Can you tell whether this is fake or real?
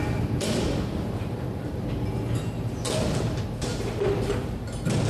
real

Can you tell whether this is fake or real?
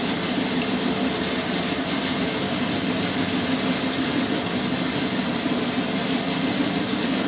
real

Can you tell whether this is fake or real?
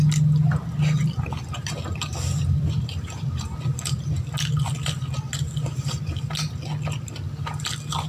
real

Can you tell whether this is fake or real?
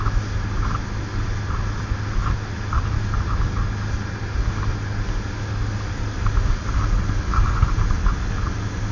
real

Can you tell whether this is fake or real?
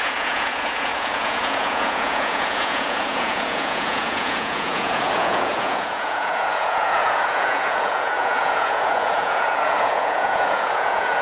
fake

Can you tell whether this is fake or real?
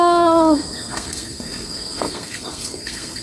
fake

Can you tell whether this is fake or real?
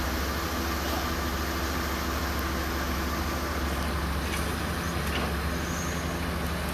real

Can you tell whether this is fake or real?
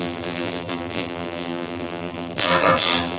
fake